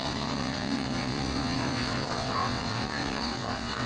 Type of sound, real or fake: fake